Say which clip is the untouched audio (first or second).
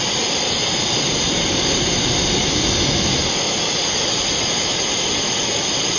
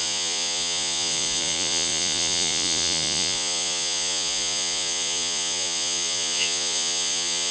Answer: first